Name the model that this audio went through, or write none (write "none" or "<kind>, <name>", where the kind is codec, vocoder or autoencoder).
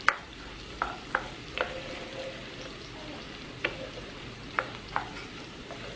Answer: none